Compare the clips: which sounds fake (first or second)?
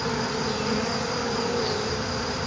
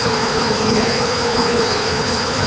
second